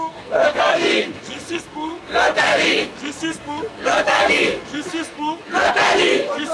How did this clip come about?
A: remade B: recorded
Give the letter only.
A